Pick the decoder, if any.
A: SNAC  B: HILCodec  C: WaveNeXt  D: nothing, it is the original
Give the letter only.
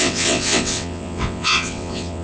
C